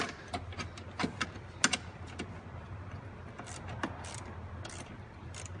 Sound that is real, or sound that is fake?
real